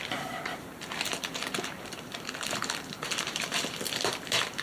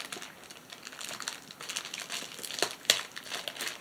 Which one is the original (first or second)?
second